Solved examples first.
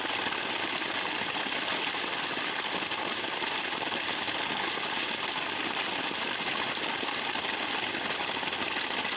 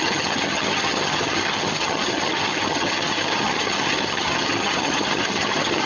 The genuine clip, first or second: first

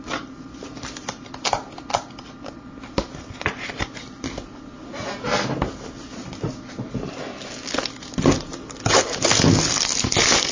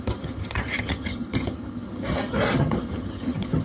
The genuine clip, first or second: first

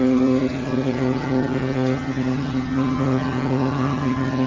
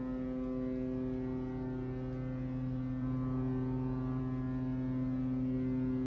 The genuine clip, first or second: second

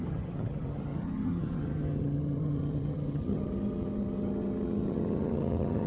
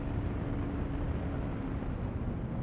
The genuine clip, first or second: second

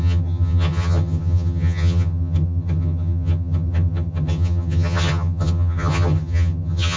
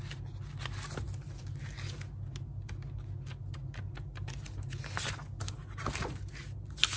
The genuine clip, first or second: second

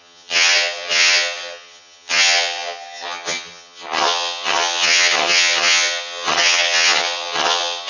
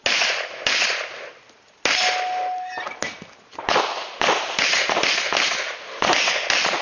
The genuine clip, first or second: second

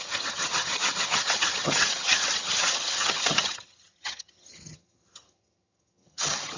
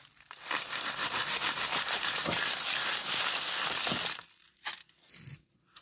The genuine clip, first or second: second